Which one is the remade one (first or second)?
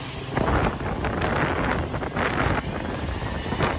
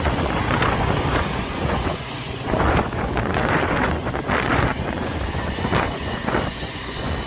second